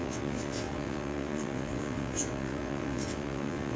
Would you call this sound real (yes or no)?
no